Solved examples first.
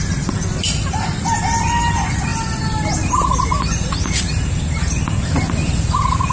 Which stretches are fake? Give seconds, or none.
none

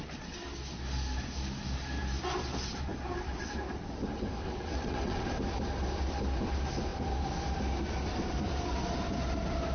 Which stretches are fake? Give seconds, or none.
4.4-5.2 (vocoder, WaveNeXt)

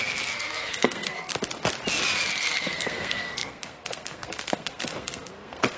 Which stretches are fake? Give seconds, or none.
0.0-1.3 (codec, SNAC); 2.3-5.8

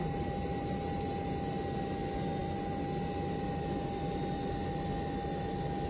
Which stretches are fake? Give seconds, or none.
none

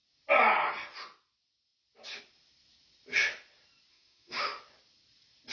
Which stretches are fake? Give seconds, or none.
3.9-4.6 (autoencoder, DAC-VAE)

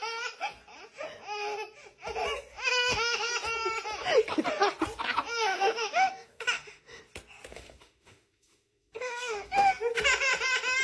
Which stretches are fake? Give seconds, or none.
2.5-3.3 (autoencoder, DAC-VAE); 5.5-7.0; 7.5-9.7

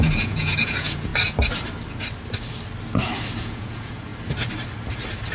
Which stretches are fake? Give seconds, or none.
0.0-1.1 (vocoder, Vocos); 3.4-4.1